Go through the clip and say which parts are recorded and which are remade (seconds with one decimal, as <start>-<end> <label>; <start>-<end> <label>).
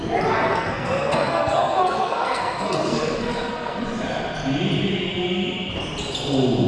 0.0-0.4 recorded; 0.4-3.8 remade; 3.8-6.7 recorded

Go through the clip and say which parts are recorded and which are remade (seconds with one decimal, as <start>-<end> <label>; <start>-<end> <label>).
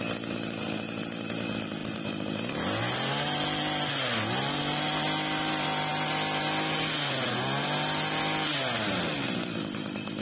0.0-10.2 recorded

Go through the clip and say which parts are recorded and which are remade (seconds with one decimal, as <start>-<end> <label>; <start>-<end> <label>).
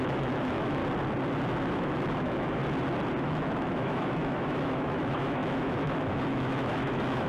0.0-0.8 remade; 0.8-1.7 recorded; 1.7-2.6 remade; 2.6-3.2 recorded; 3.2-7.3 remade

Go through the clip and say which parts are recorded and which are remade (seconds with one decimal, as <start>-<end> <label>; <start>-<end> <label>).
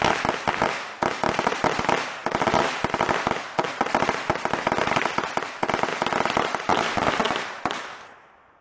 0.0-2.2 recorded; 2.2-3.7 remade; 3.7-4.3 recorded; 4.3-5.1 remade; 5.1-5.9 recorded; 5.9-7.6 remade; 7.6-8.6 recorded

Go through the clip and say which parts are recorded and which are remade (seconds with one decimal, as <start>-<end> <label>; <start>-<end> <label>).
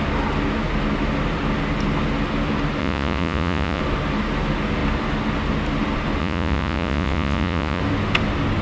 0.0-2.8 recorded; 2.8-3.8 remade; 3.8-6.2 recorded; 6.2-7.8 remade; 7.8-8.6 recorded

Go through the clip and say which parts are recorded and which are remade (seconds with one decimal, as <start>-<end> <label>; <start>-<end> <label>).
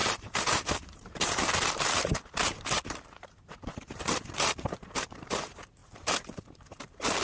0.0-7.2 remade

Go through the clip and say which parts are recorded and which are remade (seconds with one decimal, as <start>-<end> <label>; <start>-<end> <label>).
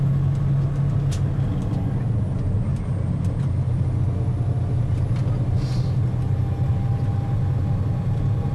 0.0-8.5 recorded